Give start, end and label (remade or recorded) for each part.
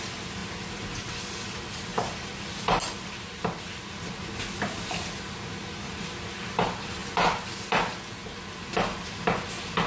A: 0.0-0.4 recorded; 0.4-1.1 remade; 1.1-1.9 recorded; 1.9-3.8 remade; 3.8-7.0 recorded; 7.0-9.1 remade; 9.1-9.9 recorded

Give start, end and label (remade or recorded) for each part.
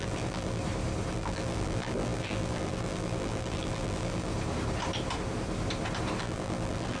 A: 0.0-0.6 remade; 0.6-1.1 recorded; 1.1-4.3 remade; 4.3-6.2 recorded; 6.2-7.0 remade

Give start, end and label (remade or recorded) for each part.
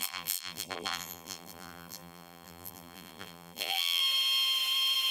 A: 0.0-4.0 remade; 4.0-5.1 recorded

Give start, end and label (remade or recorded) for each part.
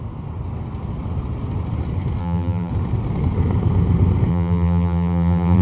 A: 0.0-2.2 recorded; 2.2-2.7 remade; 2.7-4.3 recorded; 4.3-5.6 remade